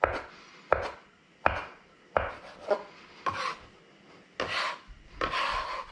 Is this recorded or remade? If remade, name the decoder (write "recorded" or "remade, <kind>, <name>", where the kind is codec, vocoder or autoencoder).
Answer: recorded